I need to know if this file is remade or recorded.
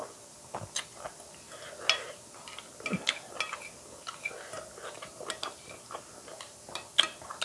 recorded